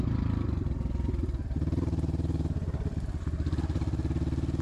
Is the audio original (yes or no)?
yes